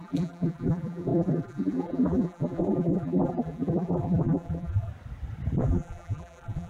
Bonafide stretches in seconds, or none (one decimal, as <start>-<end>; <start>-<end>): 4.9-5.6